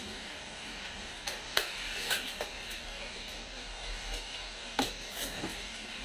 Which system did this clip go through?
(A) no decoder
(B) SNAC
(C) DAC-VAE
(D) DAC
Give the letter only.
D